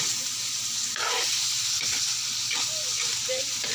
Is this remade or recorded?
recorded